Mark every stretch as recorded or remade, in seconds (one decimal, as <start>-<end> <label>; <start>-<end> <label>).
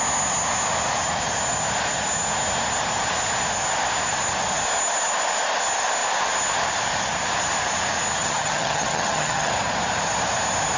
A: 0.0-8.2 recorded; 8.2-9.5 remade; 9.5-10.8 recorded